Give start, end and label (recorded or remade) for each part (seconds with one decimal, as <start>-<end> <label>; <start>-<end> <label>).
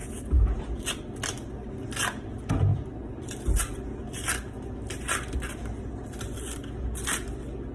0.0-0.6 remade; 0.6-7.7 recorded